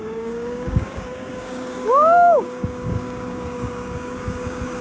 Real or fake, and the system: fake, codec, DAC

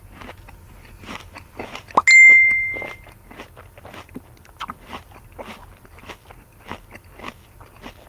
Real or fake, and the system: real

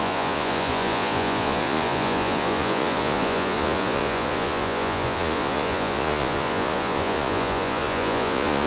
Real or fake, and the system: fake, vocoder, Vocos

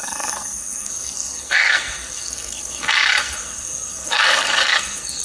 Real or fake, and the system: fake, codec, SNAC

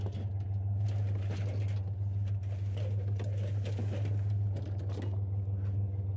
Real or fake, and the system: real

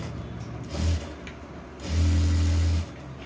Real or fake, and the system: real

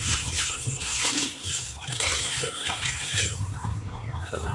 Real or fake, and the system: fake, codec, SNAC